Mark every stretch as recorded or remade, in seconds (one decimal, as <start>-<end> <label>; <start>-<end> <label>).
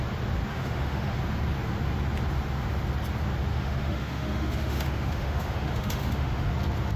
0.0-0.5 recorded; 0.5-1.2 remade; 1.2-3.5 recorded; 3.5-6.5 remade; 6.5-7.0 recorded